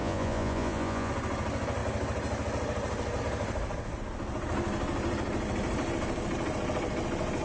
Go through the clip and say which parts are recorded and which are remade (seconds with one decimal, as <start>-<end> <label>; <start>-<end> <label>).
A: 0.0-1.1 remade; 1.1-7.4 recorded